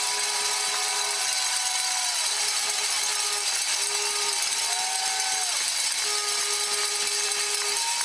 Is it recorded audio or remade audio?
recorded